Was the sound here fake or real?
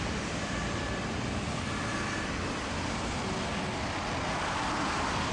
real